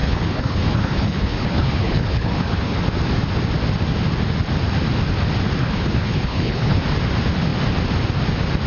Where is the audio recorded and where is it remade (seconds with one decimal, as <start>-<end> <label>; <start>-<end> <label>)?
0.0-2.8 remade; 2.8-5.6 recorded; 5.6-6.8 remade; 6.8-8.7 recorded